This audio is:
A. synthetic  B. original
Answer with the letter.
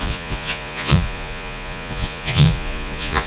A